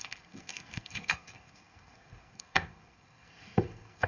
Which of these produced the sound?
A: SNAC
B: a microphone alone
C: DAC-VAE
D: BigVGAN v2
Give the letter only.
A